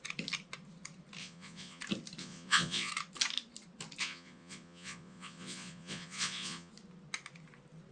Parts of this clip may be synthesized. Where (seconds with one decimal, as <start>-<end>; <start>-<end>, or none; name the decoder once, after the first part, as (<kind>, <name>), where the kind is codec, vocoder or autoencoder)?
1.2-1.8 (vocoder, Vocos); 2.2-2.9; 4.0-6.7